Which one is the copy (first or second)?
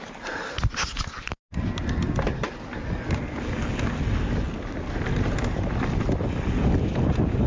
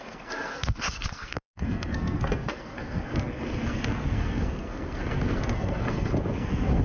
second